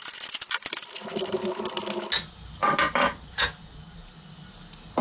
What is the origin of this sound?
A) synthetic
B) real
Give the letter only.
B